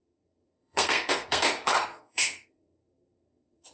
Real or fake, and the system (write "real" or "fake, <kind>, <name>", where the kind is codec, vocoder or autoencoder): fake, codec, SNAC